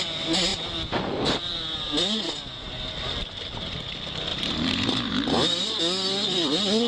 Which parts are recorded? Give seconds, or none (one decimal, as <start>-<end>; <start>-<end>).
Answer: 0.0-4.3; 5.8-6.9